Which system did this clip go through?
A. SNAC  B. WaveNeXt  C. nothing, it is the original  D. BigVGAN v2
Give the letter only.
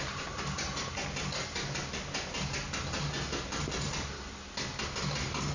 C